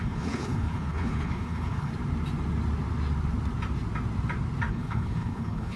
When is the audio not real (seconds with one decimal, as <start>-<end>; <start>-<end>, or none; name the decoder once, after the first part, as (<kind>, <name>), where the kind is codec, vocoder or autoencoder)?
0.0-1.9 (codec, HILCodec); 4.7-5.8